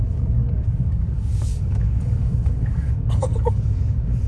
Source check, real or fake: fake